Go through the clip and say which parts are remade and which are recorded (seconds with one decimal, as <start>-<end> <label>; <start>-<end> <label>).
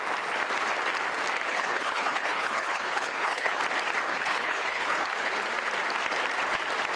0.0-1.5 recorded; 1.5-3.6 remade; 3.6-4.1 recorded; 4.1-5.4 remade; 5.4-7.0 recorded